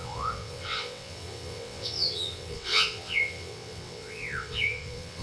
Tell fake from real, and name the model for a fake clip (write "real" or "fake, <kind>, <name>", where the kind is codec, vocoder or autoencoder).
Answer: fake, vocoder, WaveNeXt